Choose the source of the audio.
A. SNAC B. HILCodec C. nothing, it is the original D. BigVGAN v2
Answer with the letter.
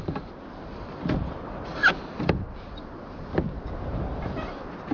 C